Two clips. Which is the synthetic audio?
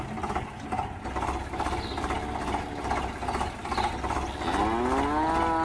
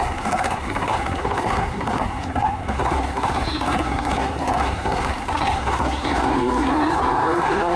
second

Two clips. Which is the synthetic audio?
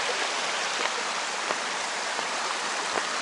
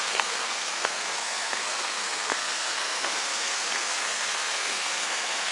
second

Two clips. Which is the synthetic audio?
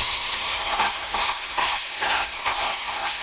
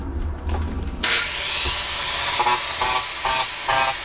first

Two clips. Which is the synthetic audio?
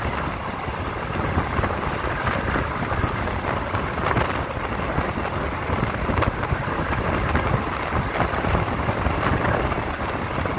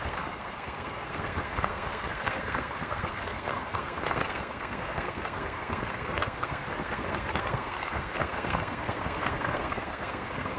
second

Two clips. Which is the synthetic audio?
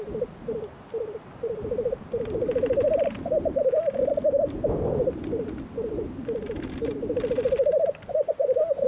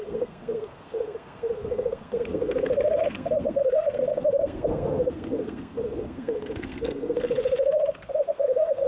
second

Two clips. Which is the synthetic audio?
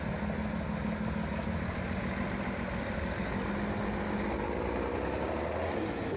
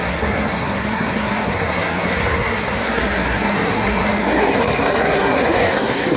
second